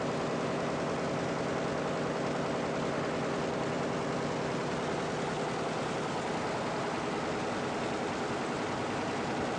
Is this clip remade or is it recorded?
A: recorded